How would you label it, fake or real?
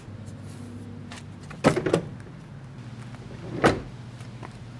real